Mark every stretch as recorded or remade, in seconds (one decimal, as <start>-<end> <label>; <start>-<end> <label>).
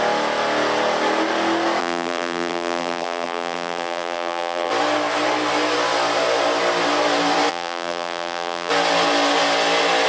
0.0-1.8 recorded; 1.8-4.7 remade; 4.7-7.5 recorded; 7.5-8.7 remade; 8.7-10.1 recorded